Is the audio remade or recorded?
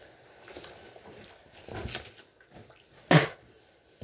recorded